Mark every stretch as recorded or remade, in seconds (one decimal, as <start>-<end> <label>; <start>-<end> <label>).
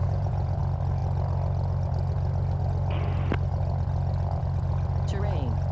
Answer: 0.0-0.6 remade; 0.6-5.7 recorded